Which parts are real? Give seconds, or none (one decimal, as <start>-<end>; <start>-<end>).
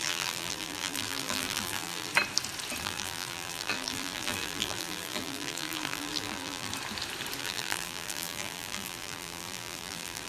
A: 2.1-2.8; 6.7-7.4